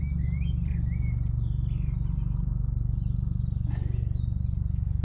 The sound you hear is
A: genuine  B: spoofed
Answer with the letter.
A